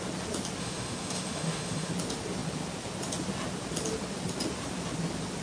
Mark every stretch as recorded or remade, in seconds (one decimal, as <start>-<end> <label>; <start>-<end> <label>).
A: 0.0-0.6 recorded; 0.6-1.9 remade; 1.9-5.4 recorded

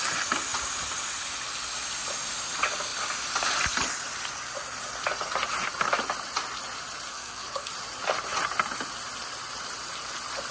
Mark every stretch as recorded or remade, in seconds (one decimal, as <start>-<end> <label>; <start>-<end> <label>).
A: 0.0-7.1 recorded; 7.1-7.7 remade; 7.7-10.5 recorded